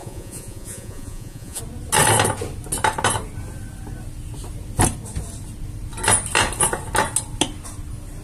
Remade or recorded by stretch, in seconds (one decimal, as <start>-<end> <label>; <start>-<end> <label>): 0.0-1.6 remade; 1.6-8.2 recorded